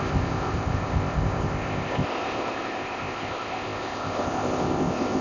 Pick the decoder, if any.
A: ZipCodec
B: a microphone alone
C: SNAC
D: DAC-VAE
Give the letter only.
A